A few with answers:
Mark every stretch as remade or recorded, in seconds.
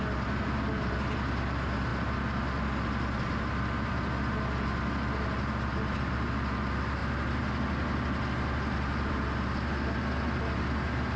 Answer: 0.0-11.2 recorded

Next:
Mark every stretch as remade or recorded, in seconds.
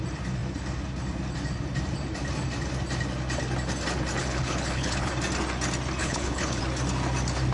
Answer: 0.0-4.2 recorded; 4.2-5.1 remade; 5.1-6.0 recorded; 6.0-6.6 remade; 6.6-7.5 recorded